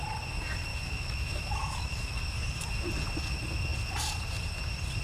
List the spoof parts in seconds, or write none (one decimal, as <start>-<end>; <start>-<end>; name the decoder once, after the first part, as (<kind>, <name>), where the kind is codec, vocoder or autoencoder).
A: 0.7-2.2 (autoencoder, DAC-VAE)

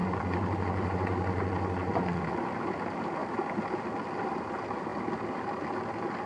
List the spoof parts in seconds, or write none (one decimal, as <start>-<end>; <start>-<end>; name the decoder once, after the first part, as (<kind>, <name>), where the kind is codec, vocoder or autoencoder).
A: 0.0-2.2 (vocoder, Vocos)

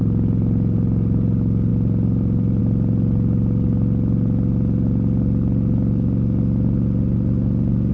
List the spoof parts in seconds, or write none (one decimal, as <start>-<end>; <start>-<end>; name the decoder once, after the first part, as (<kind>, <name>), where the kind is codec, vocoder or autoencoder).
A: none

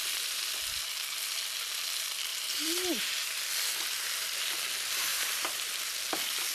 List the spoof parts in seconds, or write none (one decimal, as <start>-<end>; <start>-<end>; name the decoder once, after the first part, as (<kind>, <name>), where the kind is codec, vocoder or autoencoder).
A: 2.3-3.4 (vocoder, BigVGAN v2); 5.1-5.6

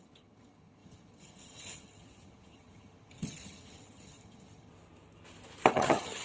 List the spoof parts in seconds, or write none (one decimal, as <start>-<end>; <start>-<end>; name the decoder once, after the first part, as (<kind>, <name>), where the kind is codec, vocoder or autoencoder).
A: 0.0-4.7 (vocoder, HiFi-GAN); 5.7-6.2

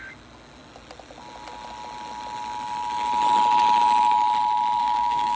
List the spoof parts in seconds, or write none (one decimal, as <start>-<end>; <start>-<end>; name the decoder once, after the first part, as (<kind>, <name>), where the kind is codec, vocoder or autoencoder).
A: 4.8-5.4 (codec, DAC)

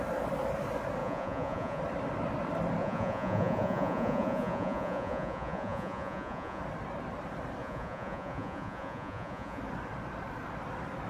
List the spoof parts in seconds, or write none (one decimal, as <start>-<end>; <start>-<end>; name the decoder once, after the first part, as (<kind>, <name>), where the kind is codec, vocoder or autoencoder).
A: 1.0-1.8 (vocoder, Vocos); 2.8-6.6; 7.6-9.6

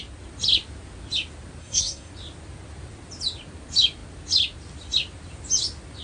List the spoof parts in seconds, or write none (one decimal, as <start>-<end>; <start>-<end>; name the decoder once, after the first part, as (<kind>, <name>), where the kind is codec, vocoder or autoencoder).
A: 1.6-2.1 (codec, SNAC)